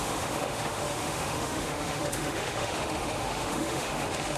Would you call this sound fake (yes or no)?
yes